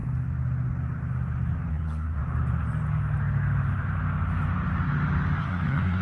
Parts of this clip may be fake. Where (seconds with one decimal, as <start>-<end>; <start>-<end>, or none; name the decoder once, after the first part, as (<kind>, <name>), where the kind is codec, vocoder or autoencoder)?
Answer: 1.7-2.2 (codec, SNAC); 5.4-6.0